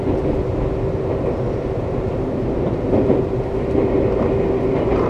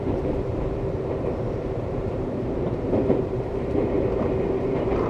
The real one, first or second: first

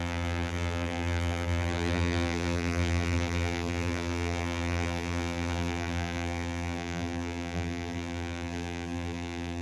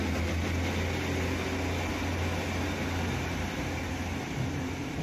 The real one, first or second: second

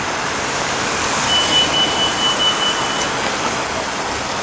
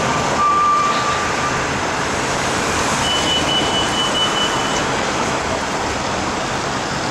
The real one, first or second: first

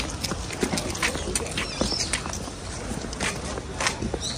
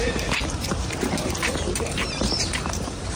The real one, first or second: first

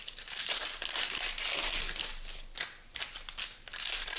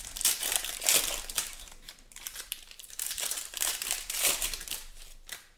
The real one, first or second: first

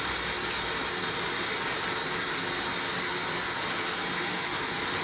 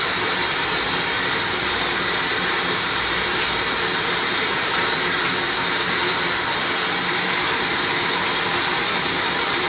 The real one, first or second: first